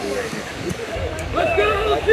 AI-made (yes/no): yes